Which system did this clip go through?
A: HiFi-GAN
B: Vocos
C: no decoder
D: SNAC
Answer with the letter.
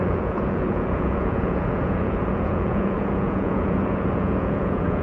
B